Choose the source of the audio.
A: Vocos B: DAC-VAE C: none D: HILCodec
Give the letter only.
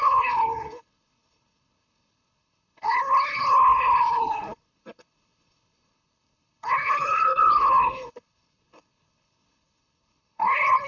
D